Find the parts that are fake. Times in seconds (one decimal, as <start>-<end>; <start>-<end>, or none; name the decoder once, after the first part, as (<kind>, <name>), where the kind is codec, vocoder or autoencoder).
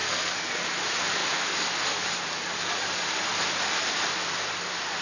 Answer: 0.0-0.6 (codec, SNAC)